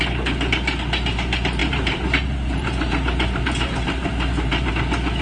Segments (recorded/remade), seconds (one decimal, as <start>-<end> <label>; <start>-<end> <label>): 0.0-1.6 recorded; 1.6-4.7 remade; 4.7-5.2 recorded